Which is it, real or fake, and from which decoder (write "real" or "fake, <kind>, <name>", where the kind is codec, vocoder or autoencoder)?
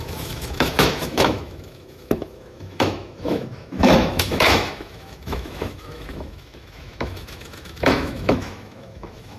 fake, autoencoder, DAC-VAE